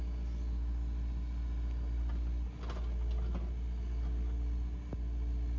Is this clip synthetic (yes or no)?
no